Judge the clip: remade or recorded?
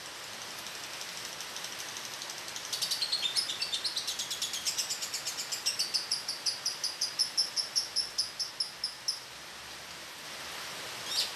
recorded